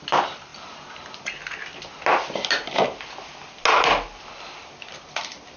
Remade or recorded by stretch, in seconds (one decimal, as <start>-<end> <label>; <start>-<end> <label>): 0.0-5.6 recorded